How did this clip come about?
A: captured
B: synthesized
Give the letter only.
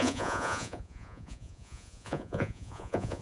B